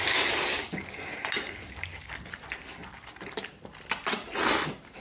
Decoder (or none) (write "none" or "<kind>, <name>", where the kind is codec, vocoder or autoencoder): none